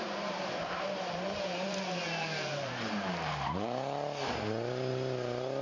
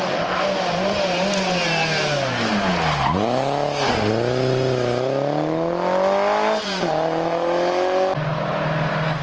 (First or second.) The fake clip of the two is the first